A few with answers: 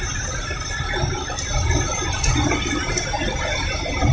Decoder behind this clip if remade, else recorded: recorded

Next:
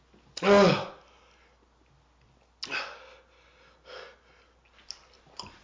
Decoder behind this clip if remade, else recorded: recorded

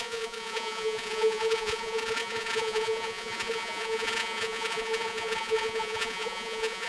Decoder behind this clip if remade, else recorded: remade, vocoder, Vocos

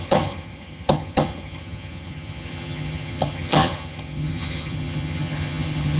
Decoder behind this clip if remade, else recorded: remade, vocoder, HiFi-GAN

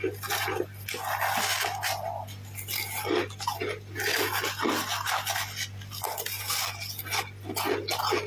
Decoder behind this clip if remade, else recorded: recorded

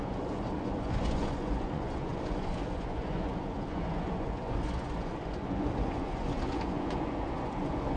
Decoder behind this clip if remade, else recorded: remade, vocoder, Vocos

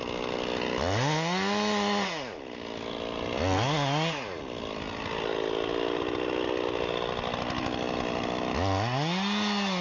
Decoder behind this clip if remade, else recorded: recorded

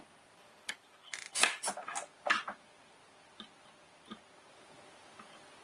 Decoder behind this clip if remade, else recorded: recorded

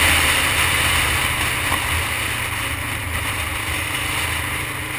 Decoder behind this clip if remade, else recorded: recorded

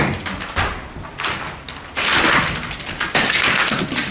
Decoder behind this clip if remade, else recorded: recorded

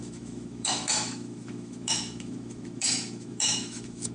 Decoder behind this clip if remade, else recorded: remade, autoencoder, DAC-VAE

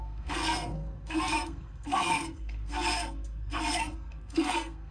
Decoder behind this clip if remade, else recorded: remade, codec, SNAC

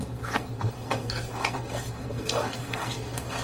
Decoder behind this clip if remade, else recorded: remade, codec, SNAC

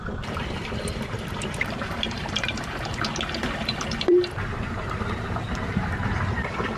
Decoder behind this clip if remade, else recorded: remade, vocoder, BigVGAN v2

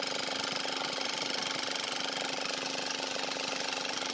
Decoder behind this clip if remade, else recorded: recorded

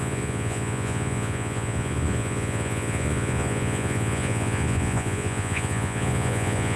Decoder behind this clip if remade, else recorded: remade, vocoder, Vocos